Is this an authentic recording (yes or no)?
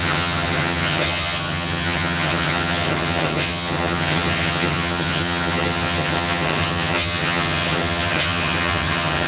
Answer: no